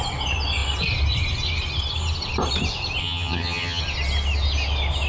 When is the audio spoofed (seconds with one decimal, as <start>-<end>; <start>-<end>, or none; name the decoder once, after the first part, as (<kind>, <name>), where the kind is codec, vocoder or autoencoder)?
3.0-3.8 (vocoder, HiFi-GAN)